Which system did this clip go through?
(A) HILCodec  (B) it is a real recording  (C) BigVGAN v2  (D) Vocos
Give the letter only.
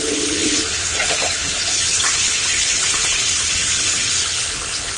A